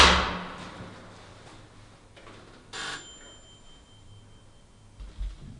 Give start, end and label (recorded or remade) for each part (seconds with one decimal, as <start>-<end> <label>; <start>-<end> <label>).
0.0-5.6 recorded